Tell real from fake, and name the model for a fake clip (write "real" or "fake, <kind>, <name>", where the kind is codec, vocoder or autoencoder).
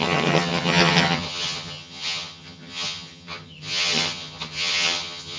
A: fake, vocoder, HiFi-GAN